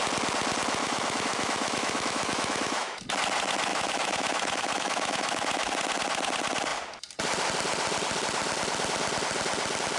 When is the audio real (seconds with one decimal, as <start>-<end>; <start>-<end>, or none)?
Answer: 0.0-0.8; 3.0-3.7; 5.7-10.0